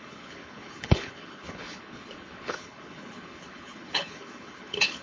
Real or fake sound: fake